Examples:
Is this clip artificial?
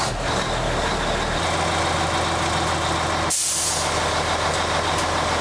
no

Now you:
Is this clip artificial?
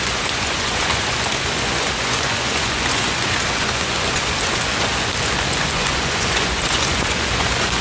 yes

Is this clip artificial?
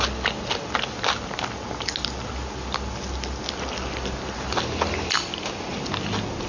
no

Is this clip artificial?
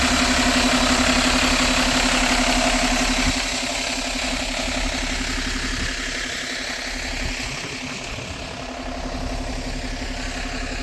no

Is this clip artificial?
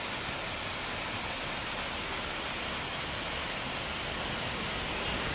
no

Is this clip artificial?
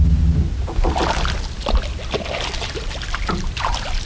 no